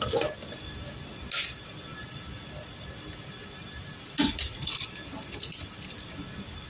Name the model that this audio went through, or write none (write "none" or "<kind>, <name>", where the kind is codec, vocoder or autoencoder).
none